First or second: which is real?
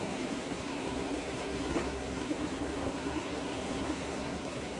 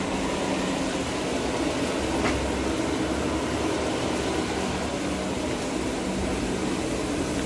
second